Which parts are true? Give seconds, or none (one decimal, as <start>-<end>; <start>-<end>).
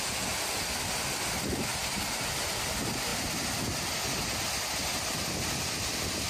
0.0-1.7; 2.2-6.3